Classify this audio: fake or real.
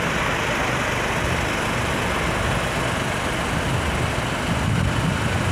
real